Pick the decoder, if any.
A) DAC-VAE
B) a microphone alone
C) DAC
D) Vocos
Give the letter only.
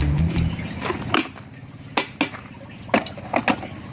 B